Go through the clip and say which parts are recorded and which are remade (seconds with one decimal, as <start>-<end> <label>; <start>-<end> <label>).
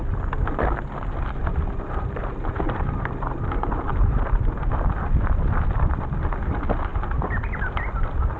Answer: 0.0-1.4 recorded; 1.4-4.7 remade; 4.7-8.4 recorded